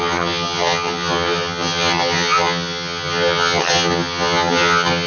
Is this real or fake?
fake